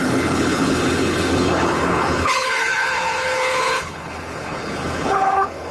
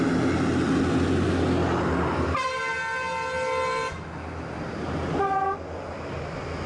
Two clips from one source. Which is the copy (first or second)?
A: first